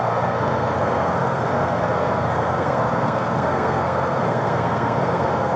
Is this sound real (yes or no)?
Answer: no